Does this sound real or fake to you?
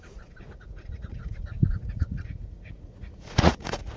fake